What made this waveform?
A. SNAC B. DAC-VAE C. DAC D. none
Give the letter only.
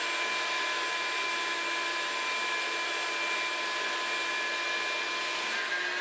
D